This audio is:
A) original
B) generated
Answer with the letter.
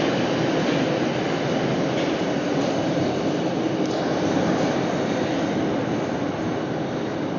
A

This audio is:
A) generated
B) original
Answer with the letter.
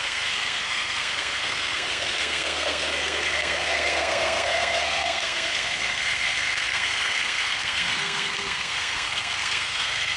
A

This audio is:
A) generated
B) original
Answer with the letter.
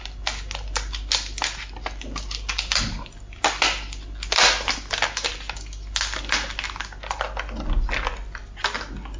B